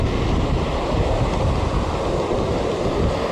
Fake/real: real